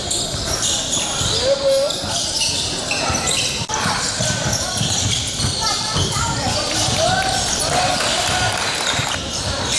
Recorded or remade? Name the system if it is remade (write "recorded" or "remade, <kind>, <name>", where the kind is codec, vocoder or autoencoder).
recorded